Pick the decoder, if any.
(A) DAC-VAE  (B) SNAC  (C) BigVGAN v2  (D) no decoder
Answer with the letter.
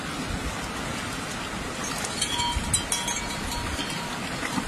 D